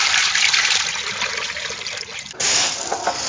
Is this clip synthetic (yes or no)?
no